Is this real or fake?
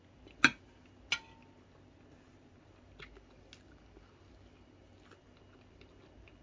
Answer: real